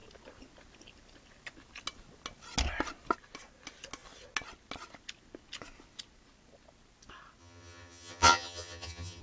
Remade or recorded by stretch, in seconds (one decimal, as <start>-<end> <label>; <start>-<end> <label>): 0.0-7.4 recorded; 7.4-9.2 remade